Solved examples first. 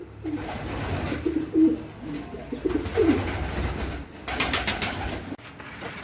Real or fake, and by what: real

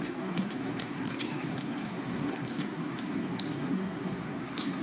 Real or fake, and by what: fake, codec, SNAC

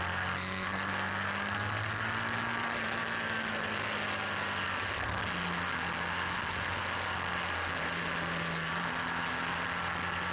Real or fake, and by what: real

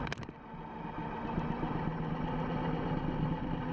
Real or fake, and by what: real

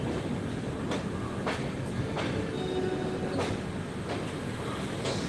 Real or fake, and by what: real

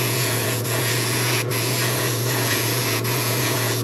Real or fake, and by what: fake, vocoder, Vocos